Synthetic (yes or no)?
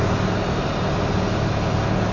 no